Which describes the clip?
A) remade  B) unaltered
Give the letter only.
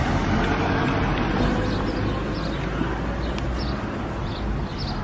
B